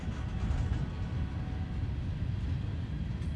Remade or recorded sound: recorded